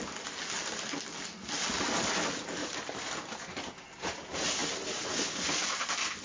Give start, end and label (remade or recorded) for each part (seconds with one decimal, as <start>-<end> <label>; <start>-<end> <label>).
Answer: 0.0-2.6 recorded; 2.6-3.1 remade; 3.1-6.2 recorded